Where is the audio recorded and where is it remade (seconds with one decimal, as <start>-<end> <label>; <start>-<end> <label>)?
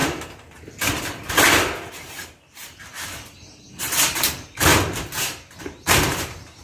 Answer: 0.0-1.9 recorded; 1.9-4.7 remade; 4.7-5.6 recorded; 5.6-6.6 remade